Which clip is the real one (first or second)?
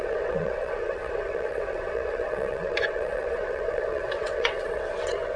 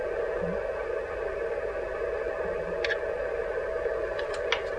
second